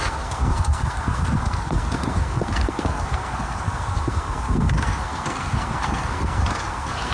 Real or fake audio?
fake